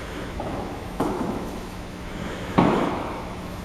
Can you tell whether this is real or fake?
fake